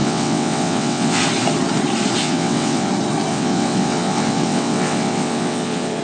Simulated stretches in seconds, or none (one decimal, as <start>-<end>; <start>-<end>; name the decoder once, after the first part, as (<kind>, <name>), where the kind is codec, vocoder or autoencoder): 0.0-1.2 (vocoder, WaveNeXt); 2.2-2.9; 3.3-6.0